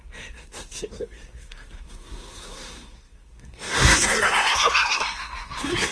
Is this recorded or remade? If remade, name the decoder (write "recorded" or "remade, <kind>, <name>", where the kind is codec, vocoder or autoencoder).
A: remade, codec, SNAC